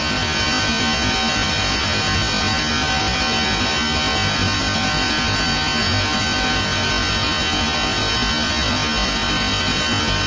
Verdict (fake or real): real